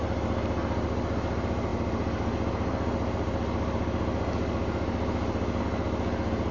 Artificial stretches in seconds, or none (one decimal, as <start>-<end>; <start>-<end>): none